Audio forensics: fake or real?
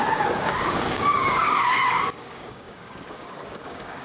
fake